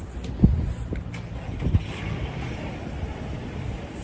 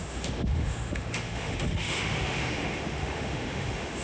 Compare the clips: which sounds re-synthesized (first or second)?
second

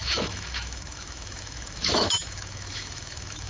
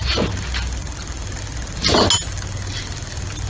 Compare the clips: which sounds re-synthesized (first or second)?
first